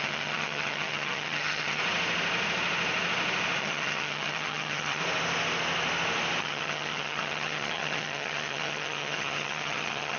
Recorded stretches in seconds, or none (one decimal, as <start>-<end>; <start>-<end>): 1.8-3.6; 5.0-6.4